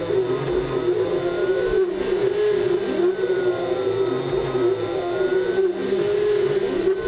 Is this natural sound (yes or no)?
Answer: yes